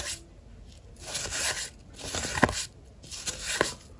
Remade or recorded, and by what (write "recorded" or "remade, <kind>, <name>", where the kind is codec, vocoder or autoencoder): recorded